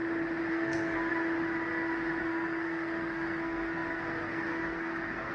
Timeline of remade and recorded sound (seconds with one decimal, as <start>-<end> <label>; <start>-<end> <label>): 0.0-0.5 recorded; 0.5-1.1 remade; 1.1-2.2 recorded; 2.2-5.3 remade